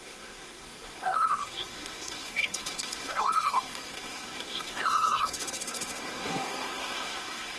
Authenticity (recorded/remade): remade